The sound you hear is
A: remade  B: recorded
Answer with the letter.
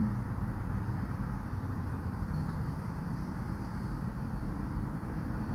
A